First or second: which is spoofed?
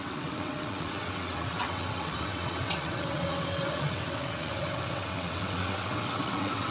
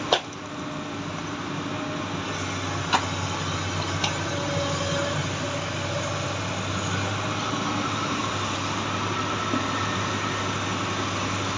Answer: first